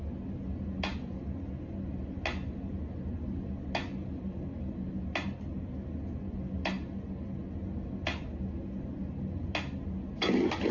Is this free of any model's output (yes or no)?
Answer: yes